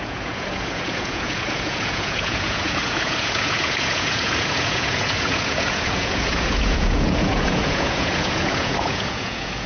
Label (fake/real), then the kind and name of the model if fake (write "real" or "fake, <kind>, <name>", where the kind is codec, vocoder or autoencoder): fake, vocoder, Vocos